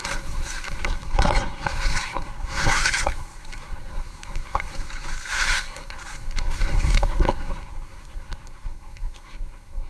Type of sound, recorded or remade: remade